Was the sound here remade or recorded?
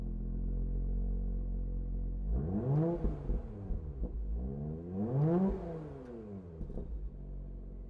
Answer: recorded